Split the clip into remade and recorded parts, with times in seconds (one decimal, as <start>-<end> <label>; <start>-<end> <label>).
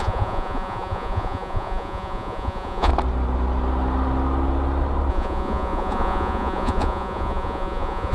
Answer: 0.0-2.9 remade; 2.9-5.1 recorded; 5.1-8.1 remade